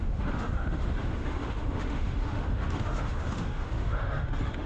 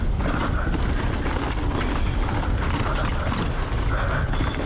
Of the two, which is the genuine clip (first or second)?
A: second